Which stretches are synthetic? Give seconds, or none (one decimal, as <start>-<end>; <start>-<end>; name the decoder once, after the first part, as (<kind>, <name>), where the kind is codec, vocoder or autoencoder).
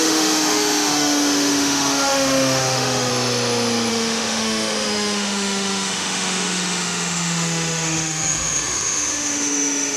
0.0-3.1 (autoencoder, DAC-VAE); 3.9-10.0